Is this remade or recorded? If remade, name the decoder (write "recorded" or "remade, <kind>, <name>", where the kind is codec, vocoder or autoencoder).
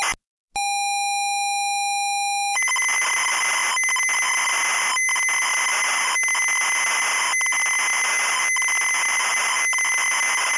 recorded